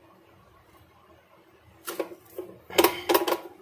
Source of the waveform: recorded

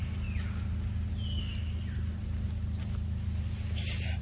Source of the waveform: recorded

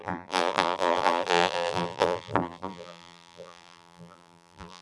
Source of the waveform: remade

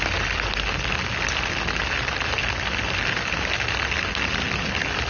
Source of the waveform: recorded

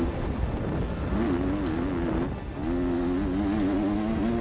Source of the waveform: recorded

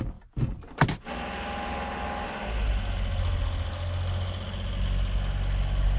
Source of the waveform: recorded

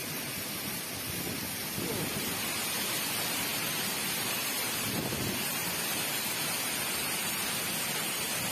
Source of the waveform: remade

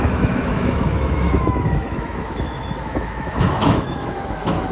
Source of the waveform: remade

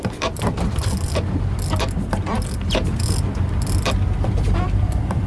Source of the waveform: remade